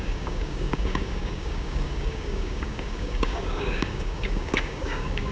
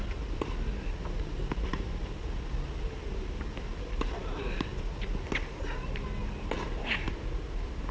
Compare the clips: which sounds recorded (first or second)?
second